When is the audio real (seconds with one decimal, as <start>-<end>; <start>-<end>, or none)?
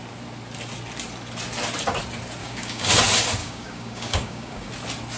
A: 0.0-2.4; 2.9-3.4; 4.7-5.2